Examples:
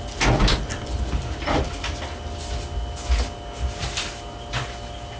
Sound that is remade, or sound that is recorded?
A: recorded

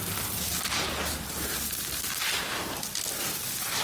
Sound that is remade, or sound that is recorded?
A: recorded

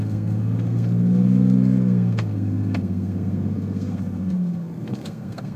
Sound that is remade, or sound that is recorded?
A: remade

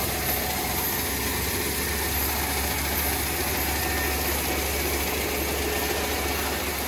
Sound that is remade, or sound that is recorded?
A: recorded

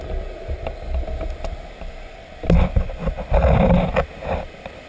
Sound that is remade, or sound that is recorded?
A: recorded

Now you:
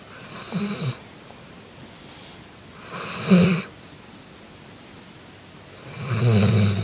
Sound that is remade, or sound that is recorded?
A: recorded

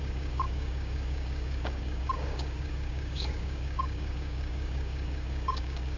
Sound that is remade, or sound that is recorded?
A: remade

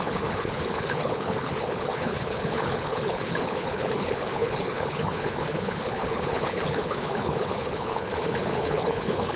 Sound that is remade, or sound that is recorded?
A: remade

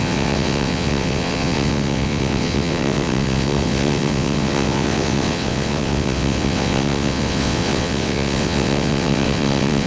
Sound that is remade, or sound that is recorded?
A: remade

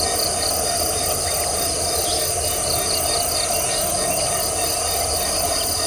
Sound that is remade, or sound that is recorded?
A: recorded